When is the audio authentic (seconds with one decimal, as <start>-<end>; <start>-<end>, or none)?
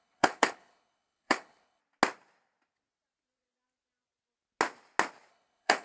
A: 1.8-5.3